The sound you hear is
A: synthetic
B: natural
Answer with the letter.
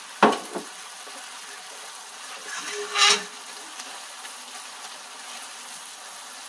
B